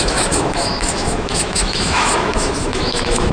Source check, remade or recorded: remade